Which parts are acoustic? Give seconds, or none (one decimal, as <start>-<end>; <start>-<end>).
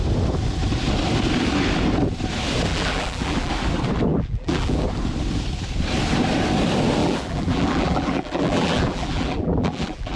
0.0-2.7; 3.5-4.1; 4.8-7.0